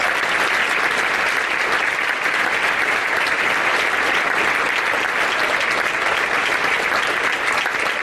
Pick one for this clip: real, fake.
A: real